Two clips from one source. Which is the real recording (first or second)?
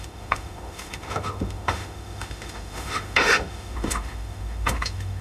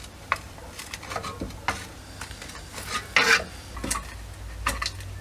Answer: second